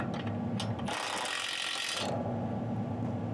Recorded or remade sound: recorded